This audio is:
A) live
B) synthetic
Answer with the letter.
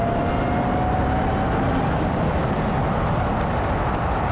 A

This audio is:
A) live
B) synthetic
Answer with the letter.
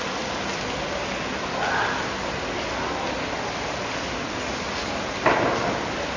A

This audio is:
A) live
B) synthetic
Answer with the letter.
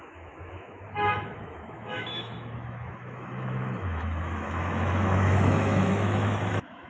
B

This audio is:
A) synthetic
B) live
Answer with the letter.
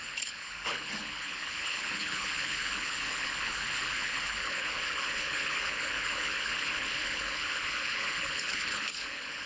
A